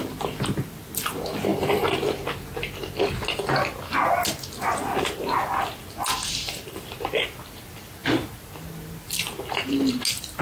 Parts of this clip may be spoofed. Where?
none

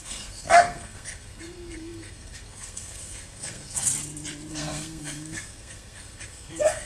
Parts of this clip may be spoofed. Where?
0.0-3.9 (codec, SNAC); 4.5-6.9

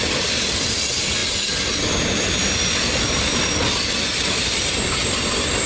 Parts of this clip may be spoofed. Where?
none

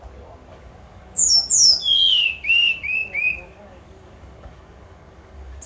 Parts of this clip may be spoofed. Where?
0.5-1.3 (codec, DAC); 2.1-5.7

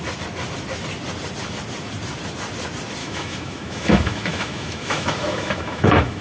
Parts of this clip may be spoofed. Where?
3.0-6.2 (autoencoder, DAC-VAE)

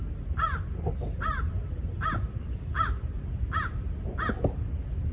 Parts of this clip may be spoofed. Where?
1.8-2.4 (vocoder, BigVGAN v2)